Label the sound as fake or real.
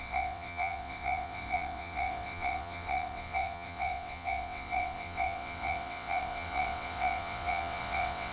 fake